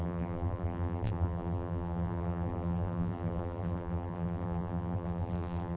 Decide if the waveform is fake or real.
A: fake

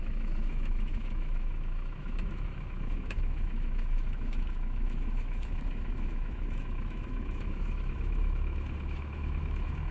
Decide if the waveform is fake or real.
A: fake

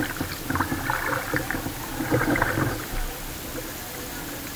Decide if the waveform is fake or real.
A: real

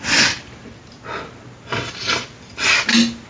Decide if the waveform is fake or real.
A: real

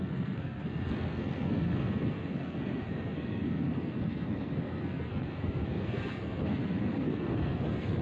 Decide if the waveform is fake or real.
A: fake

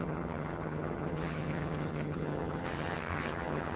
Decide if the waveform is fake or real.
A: fake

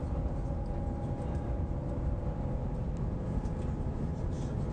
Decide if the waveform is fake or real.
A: real